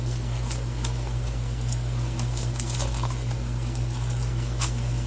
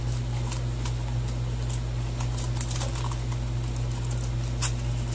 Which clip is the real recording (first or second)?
second